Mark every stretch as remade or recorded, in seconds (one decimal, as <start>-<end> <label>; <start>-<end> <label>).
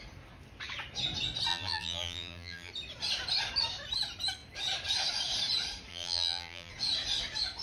0.0-1.5 recorded; 1.5-2.7 remade; 2.7-5.9 recorded; 5.9-6.7 remade; 6.7-7.6 recorded